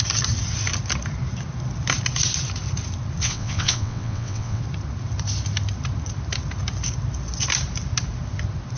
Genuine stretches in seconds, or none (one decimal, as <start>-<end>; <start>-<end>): 0.0-3.2; 4.6-8.8